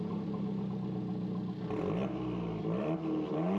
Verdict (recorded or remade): recorded